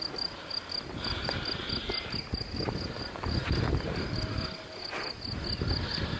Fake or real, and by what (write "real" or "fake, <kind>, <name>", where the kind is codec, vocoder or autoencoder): real